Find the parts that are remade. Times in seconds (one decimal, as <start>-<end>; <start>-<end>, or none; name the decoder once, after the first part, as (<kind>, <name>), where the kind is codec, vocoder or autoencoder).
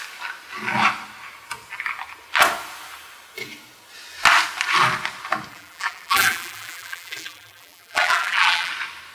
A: 5.5-8.7 (vocoder, BigVGAN v2)